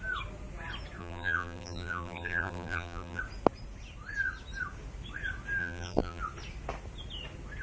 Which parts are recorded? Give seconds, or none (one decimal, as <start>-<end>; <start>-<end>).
0.0-1.0; 3.2-5.6; 6.2-7.6